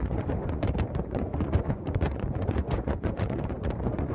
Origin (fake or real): fake